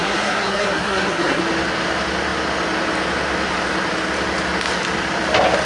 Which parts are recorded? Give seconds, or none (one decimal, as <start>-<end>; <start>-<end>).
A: 1.4-5.7